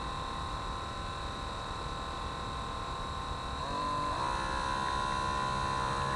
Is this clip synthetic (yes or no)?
yes